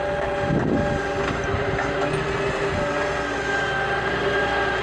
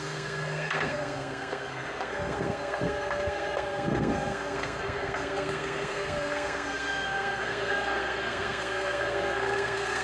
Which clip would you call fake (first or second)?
second